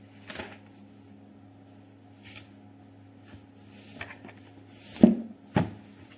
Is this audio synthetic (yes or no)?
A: no